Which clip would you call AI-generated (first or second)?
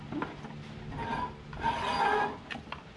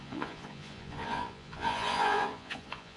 second